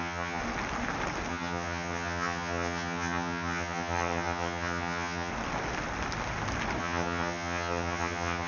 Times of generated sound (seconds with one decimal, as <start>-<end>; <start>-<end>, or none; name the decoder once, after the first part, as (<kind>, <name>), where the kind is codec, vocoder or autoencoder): 0.0-0.4 (vocoder, HiFi-GAN); 1.3-5.3; 6.8-8.5